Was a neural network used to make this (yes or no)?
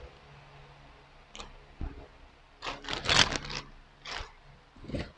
no